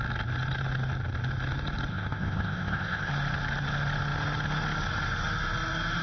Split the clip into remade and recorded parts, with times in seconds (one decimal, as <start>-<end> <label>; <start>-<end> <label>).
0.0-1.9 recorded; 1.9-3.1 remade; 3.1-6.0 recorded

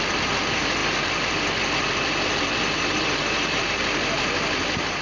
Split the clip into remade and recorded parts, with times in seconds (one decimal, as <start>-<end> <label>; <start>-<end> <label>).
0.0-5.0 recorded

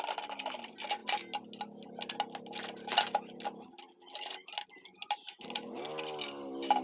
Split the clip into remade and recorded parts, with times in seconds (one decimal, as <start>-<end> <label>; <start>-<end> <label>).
0.0-6.8 recorded